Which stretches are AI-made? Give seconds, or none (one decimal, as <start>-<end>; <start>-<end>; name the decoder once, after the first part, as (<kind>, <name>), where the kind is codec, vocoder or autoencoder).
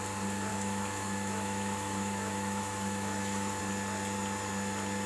0.5-3.6 (autoencoder, DAC-VAE)